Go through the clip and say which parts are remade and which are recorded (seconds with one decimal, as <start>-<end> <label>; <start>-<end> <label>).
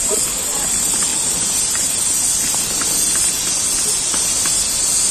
0.0-5.1 recorded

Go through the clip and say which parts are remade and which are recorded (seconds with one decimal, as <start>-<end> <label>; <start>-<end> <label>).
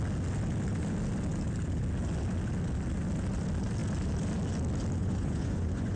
0.0-5.0 recorded; 5.0-6.0 remade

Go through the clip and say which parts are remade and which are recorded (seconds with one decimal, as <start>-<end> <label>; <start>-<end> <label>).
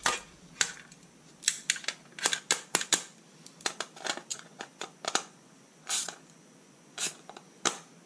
0.0-4.3 recorded; 4.3-7.6 remade; 7.6-8.1 recorded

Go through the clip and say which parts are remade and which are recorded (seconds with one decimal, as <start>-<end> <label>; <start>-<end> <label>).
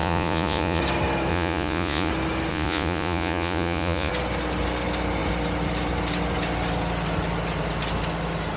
0.0-0.8 remade; 0.8-1.3 recorded; 1.3-2.1 remade; 2.1-2.5 recorded; 2.5-4.1 remade; 4.1-8.6 recorded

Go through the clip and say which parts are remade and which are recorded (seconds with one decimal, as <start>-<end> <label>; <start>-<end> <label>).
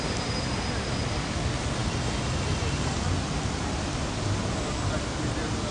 0.0-5.7 recorded